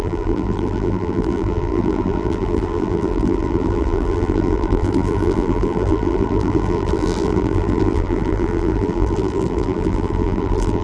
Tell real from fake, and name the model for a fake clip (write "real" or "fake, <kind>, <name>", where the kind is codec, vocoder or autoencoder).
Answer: fake, vocoder, BigVGAN v2